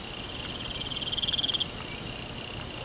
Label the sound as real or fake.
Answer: real